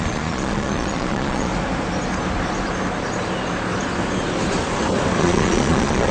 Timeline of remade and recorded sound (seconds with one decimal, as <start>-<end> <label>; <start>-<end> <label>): 0.0-1.5 remade; 1.5-5.2 recorded; 5.2-6.1 remade